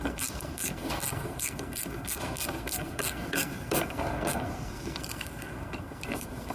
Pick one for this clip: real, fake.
fake